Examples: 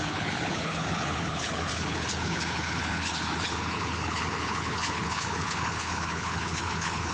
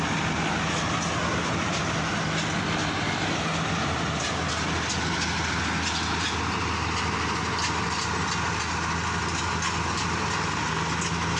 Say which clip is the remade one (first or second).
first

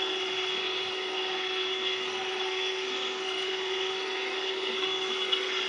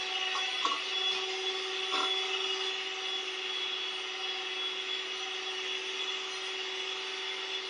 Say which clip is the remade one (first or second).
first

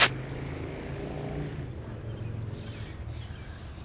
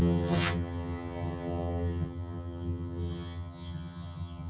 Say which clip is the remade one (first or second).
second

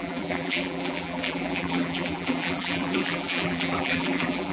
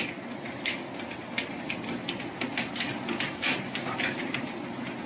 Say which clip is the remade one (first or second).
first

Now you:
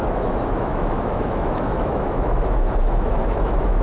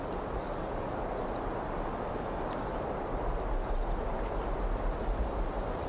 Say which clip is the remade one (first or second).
first